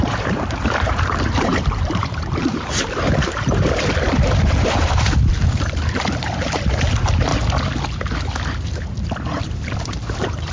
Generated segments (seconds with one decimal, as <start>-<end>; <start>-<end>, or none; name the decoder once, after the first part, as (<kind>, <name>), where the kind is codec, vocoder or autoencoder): 0.0-7.3 (vocoder, BigVGAN v2); 9.4-10.5